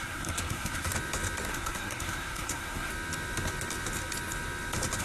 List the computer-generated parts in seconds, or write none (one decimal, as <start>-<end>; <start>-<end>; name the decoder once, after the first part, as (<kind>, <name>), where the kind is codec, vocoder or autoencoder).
0.0-0.9 (codec, SNAC); 1.5-2.9

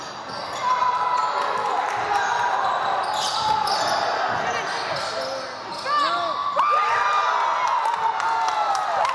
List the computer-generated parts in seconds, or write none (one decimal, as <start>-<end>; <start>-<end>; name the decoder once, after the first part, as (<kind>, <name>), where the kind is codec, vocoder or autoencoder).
none

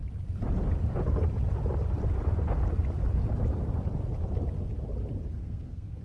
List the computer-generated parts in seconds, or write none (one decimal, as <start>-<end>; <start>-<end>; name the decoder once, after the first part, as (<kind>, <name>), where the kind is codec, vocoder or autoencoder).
5.3-6.0 (codec, SNAC)

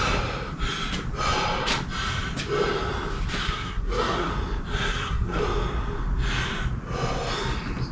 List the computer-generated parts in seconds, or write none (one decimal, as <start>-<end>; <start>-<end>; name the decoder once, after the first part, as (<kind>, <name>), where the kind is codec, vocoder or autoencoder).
3.4-4.3 (codec, SNAC); 4.7-5.4